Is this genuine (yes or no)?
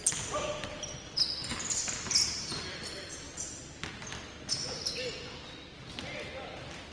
yes